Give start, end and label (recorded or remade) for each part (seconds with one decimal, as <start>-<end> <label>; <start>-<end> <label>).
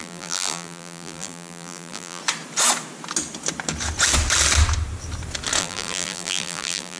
0.0-2.2 remade; 2.2-5.6 recorded; 5.6-7.0 remade